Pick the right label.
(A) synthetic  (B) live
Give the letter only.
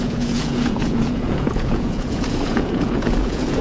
A